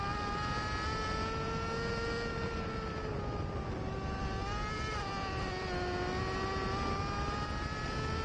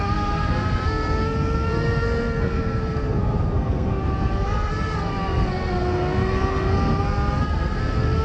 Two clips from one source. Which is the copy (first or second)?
second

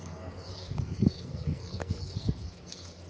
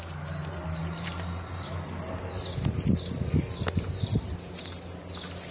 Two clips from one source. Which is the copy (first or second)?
first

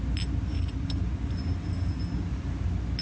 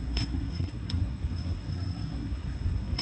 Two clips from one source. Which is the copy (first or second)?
second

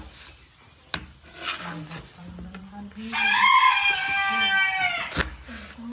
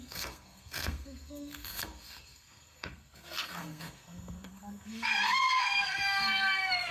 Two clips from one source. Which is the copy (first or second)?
second